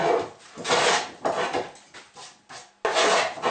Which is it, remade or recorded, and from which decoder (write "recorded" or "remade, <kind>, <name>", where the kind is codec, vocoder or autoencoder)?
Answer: recorded